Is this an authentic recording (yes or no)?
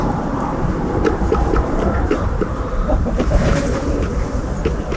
no